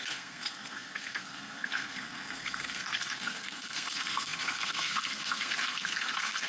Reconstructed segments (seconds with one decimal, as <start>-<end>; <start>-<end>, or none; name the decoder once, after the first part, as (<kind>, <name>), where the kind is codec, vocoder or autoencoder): 0.0-6.5 (codec, SNAC)